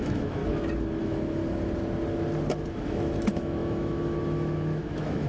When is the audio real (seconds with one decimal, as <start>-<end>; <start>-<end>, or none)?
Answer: 0.4-1.0; 1.4-2.7